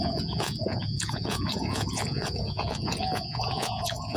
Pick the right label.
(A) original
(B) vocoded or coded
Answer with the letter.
B